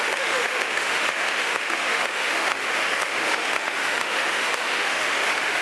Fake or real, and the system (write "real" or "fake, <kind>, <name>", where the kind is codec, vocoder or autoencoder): fake, autoencoder, DAC-VAE